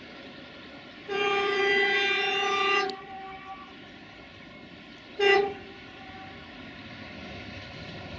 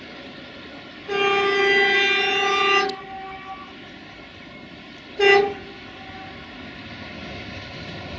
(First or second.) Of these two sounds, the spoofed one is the first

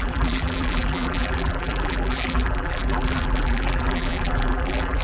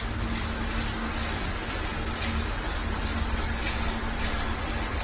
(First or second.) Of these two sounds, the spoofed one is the first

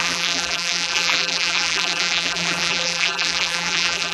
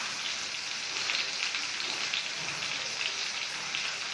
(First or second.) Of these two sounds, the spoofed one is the first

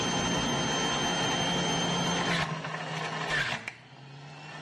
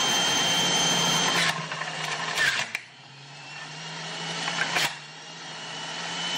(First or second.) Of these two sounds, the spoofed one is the second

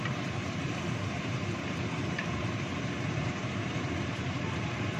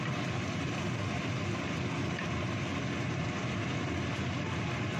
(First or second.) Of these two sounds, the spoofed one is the first